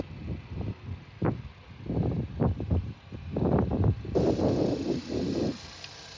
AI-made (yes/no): no